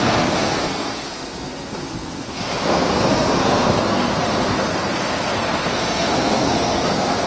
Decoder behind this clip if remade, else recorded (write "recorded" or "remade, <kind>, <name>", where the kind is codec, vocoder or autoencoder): remade, codec, SNAC